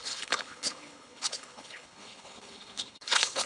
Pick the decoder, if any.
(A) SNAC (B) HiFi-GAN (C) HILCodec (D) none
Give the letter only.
C